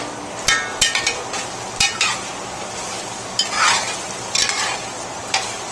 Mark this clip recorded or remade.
recorded